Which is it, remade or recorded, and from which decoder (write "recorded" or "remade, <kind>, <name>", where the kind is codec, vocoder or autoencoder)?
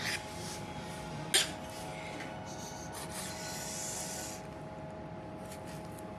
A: recorded